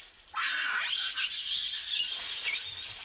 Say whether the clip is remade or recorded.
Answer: recorded